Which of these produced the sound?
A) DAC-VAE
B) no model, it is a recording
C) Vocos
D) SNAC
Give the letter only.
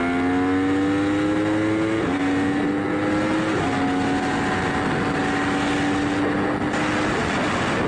B